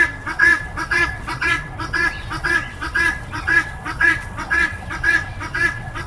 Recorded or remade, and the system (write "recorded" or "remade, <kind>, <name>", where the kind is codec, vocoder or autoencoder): remade, vocoder, WaveNeXt